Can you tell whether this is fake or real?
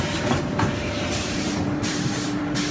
fake